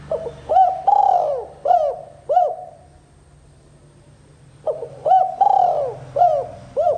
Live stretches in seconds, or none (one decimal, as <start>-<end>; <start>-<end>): 0.0-7.0